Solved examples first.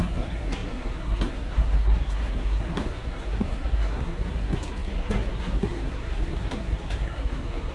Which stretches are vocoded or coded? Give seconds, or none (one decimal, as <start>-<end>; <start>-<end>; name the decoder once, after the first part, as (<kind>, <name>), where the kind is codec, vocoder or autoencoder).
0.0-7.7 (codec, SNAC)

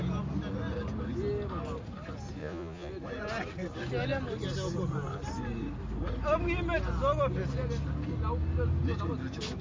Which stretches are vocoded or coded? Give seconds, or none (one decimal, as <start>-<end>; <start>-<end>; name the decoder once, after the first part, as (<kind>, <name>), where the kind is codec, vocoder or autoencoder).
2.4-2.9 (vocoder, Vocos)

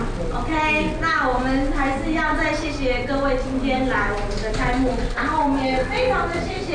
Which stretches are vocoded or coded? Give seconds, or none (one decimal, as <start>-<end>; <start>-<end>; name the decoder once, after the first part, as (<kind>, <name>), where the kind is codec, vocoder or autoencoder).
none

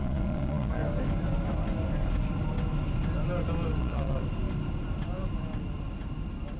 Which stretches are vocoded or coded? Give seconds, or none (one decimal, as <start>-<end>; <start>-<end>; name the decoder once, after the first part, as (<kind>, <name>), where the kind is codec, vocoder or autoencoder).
0.0-0.8 (vocoder, Vocos); 3.8-4.2

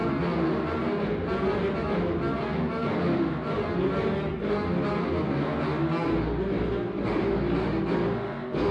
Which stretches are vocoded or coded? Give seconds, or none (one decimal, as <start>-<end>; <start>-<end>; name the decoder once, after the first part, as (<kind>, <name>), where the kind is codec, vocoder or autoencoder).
none

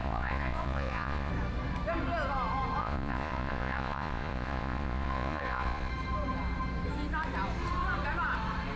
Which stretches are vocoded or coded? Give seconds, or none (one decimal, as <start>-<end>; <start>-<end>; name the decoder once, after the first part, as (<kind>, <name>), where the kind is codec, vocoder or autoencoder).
0.0-1.3 (vocoder, Vocos); 2.8-5.9

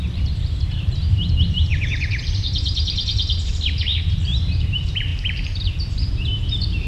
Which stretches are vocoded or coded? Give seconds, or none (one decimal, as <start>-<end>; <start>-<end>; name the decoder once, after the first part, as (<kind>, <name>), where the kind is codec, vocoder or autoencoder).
0.0-6.9 (vocoder, BigVGAN v2)